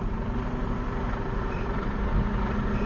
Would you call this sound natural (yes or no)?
yes